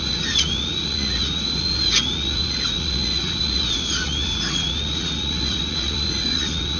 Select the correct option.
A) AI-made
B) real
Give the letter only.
A